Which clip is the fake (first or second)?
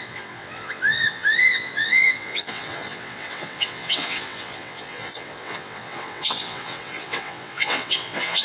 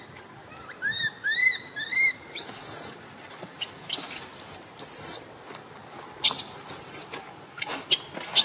first